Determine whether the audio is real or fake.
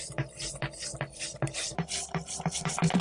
fake